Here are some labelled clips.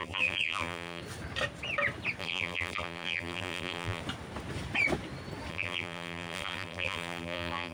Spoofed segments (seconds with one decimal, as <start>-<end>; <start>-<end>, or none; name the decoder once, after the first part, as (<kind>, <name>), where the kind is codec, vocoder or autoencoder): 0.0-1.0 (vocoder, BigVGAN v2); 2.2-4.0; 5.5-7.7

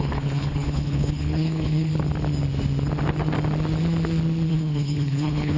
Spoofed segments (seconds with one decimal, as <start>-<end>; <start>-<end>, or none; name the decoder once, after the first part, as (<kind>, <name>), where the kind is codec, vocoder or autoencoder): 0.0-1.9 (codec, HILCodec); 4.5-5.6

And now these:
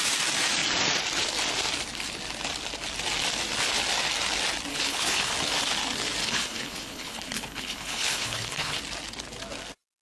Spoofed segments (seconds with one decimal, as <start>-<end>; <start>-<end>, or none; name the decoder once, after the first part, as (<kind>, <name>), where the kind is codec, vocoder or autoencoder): 4.7-5.3 (codec, HILCodec); 6.2-8.8

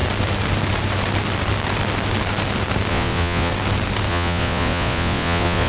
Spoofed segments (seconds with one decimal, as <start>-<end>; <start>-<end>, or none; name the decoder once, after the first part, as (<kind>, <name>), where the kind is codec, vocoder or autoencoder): 2.9-3.5 (vocoder, Vocos); 4.1-5.7